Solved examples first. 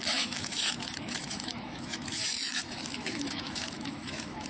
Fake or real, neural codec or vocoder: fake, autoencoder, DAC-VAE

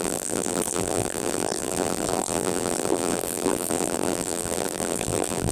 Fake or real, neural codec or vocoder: fake, vocoder, BigVGAN v2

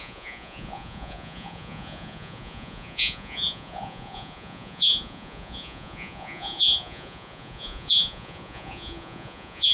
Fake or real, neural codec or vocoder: fake, vocoder, Vocos